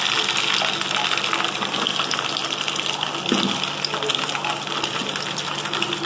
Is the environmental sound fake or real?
real